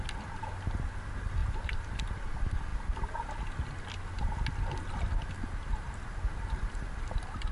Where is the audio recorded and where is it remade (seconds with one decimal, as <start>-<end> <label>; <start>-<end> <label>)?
0.0-1.4 recorded; 1.4-2.0 remade; 2.0-7.5 recorded

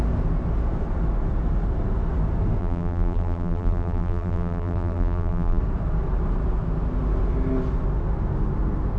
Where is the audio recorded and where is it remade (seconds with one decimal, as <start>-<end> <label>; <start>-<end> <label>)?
0.0-2.6 recorded; 2.6-5.6 remade; 5.6-9.0 recorded

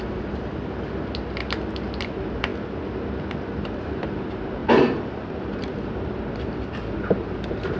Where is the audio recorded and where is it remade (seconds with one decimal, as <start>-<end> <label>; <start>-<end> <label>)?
0.0-0.5 remade; 0.5-2.0 recorded; 2.0-2.5 remade; 2.5-3.6 recorded; 3.6-7.8 remade